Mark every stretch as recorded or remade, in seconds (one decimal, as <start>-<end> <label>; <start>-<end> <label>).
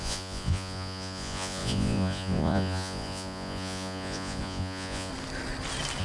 0.0-5.1 remade; 5.1-6.0 recorded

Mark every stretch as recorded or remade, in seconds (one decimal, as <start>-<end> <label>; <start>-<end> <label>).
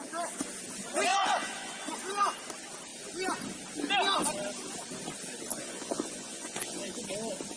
0.0-1.1 recorded; 1.1-1.9 remade; 1.9-5.5 recorded; 5.5-7.0 remade; 7.0-7.6 recorded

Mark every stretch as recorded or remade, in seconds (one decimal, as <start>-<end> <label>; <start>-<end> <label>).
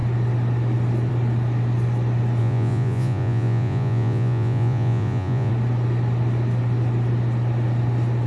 0.0-2.4 recorded; 2.4-5.5 remade; 5.5-8.3 recorded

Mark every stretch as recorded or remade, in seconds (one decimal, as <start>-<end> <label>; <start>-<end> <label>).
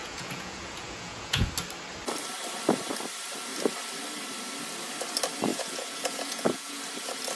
0.0-1.5 remade; 1.5-5.5 recorded; 5.5-6.8 remade; 6.8-7.3 recorded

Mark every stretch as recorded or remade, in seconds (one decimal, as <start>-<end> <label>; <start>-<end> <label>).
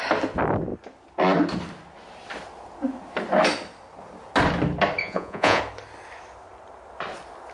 0.0-5.0 recorded; 5.0-5.6 remade; 5.6-7.5 recorded